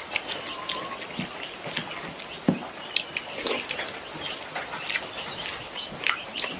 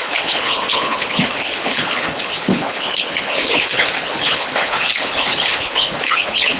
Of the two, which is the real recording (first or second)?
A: first